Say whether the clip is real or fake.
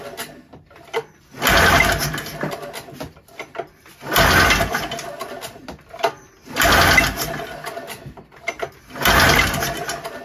real